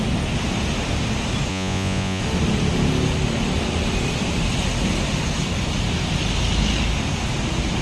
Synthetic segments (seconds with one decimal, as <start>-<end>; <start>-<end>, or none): 1.5-2.2